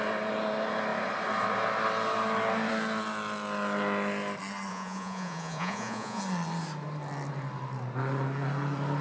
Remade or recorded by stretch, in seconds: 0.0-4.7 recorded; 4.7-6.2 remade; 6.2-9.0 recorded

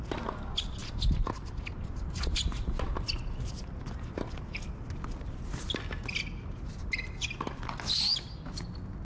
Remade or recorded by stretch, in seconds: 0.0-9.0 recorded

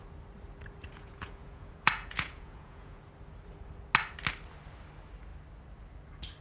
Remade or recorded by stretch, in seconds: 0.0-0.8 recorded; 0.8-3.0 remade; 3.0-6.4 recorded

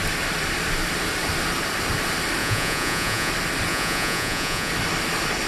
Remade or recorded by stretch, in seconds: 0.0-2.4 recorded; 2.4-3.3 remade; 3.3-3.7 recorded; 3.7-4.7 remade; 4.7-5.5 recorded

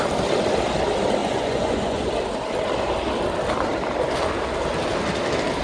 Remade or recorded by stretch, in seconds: 0.0-1.2 recorded; 1.2-2.1 remade; 2.1-5.6 recorded